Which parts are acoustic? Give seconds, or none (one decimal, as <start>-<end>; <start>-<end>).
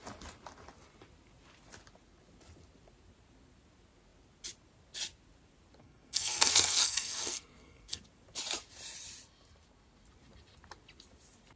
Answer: 0.0-5.8; 8.0-11.6